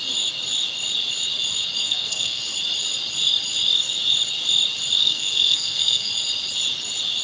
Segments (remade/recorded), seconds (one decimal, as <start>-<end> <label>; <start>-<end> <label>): 0.0-1.8 recorded; 1.8-2.4 remade; 2.4-5.0 recorded; 5.0-6.1 remade; 6.1-7.2 recorded